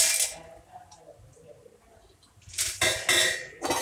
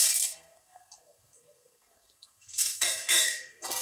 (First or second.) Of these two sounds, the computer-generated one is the second